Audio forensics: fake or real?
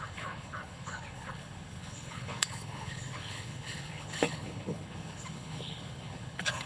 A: fake